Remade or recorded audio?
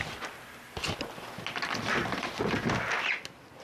recorded